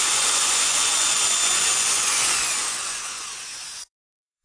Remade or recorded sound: remade